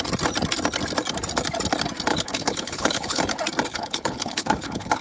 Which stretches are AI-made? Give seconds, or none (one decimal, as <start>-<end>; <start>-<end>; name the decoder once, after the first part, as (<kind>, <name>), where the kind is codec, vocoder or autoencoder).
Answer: 2.1-3.2 (codec, HILCodec); 3.7-5.0